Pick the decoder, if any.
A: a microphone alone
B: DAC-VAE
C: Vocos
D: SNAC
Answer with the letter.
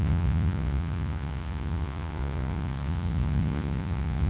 C